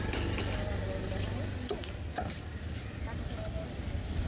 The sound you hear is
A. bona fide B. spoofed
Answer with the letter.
A